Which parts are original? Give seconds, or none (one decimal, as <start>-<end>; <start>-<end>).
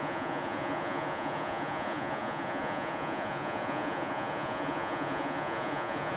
none